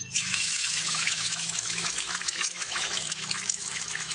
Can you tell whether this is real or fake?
fake